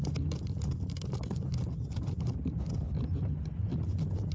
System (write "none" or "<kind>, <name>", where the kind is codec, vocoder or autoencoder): none